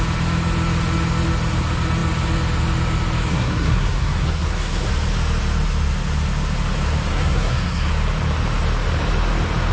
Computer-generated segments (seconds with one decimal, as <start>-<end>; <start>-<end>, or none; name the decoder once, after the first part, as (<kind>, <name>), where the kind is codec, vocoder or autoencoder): 3.3-4.9 (codec, SNAC); 7.1-7.9